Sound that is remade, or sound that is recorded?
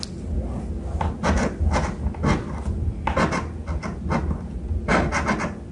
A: recorded